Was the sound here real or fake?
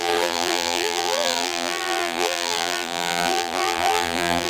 fake